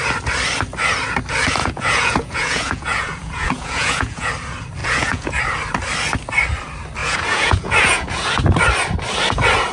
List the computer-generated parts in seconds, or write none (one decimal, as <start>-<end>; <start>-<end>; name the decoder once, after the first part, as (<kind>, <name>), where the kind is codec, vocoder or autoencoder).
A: 1.6-4.3 (vocoder, Vocos); 4.8-5.4; 7.0-8.3